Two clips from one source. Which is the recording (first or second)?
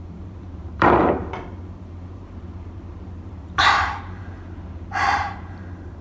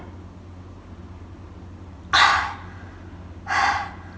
second